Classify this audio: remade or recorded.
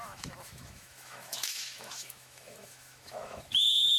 remade